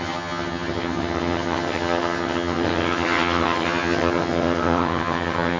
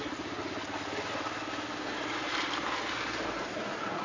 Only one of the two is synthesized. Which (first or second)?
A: first